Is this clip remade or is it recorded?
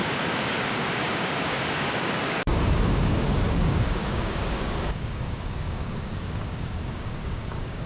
remade